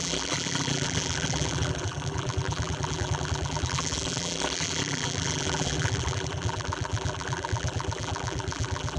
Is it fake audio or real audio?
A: fake